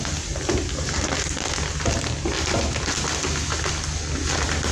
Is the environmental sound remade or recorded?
recorded